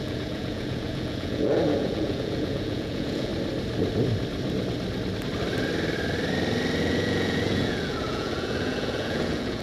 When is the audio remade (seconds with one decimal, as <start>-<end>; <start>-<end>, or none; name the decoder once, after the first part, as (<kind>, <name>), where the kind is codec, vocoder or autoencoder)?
0.0-3.3 (vocoder, Vocos); 6.8-9.6